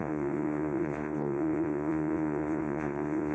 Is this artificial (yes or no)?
yes